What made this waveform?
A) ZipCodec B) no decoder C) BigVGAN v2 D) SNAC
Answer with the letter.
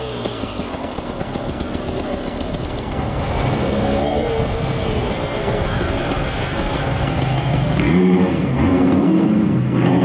D